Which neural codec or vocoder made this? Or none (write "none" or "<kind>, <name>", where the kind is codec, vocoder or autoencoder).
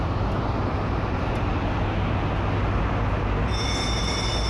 none